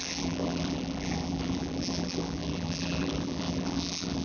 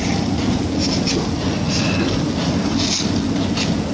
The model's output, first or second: first